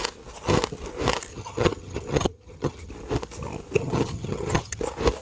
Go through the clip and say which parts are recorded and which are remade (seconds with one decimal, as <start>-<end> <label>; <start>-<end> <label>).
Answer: 0.0-1.3 recorded; 1.3-2.9 remade; 2.9-3.8 recorded; 3.8-4.8 remade; 4.8-5.2 recorded